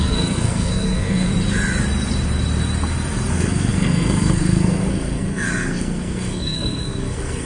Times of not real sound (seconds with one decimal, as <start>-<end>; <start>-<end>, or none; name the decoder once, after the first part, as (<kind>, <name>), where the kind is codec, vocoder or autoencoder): 0.0-1.3 (codec, SNAC); 3.3-7.5